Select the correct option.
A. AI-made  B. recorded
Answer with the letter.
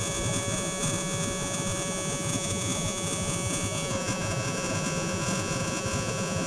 A